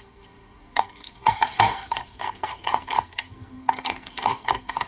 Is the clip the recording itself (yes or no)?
no